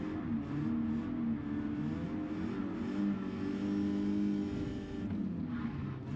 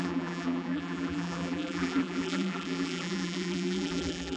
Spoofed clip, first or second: second